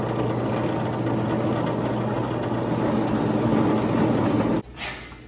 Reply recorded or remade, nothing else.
recorded